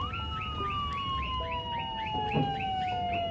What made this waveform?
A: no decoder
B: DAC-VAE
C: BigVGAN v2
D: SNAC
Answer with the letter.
A